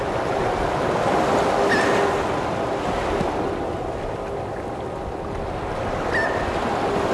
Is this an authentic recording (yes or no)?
yes